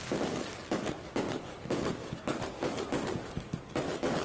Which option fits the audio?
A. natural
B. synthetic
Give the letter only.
B